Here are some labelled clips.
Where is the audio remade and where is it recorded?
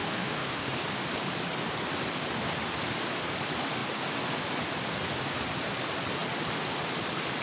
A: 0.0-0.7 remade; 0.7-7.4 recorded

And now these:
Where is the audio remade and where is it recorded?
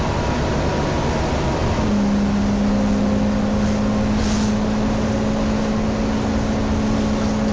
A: 0.0-7.5 recorded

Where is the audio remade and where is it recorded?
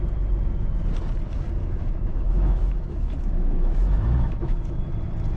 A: 0.0-1.6 recorded; 1.6-4.8 remade; 4.8-5.4 recorded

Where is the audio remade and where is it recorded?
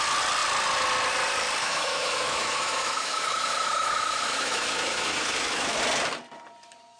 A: 0.0-1.6 recorded; 1.6-5.8 remade; 5.8-7.0 recorded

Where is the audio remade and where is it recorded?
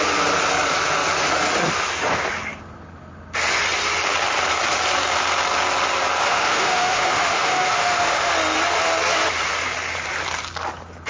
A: 0.0-6.2 recorded; 6.2-8.3 remade; 8.3-11.1 recorded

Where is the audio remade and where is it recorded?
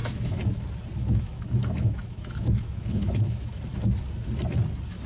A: 0.0-0.5 remade; 0.5-1.0 recorded; 1.0-3.6 remade; 3.6-5.1 recorded